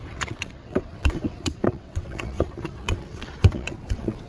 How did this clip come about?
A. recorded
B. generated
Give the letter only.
B